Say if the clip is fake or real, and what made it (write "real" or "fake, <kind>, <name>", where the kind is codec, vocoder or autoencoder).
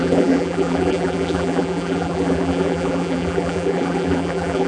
fake, vocoder, BigVGAN v2